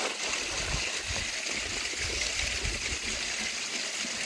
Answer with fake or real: real